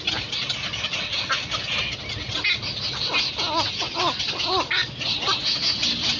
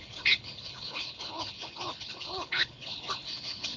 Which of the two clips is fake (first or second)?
second